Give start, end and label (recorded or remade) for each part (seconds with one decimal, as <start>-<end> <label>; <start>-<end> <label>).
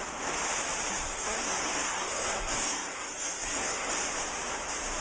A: 0.0-0.9 recorded; 0.9-3.9 remade; 3.9-5.0 recorded